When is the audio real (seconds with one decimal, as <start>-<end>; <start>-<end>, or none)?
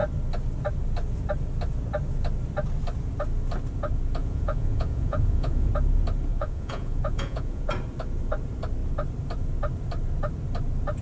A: 0.0-4.2; 5.7-6.3; 7.7-11.0